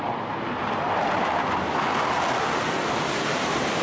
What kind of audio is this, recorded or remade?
recorded